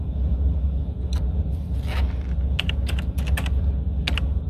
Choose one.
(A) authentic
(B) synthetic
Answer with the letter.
A